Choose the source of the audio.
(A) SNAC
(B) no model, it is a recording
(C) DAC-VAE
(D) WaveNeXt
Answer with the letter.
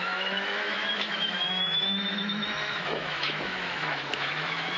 C